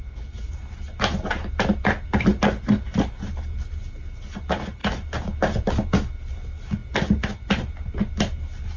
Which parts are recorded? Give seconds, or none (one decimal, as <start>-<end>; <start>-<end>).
0.0-8.8